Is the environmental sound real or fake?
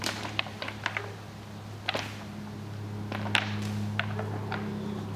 real